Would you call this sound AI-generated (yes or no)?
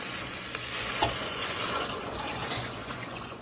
yes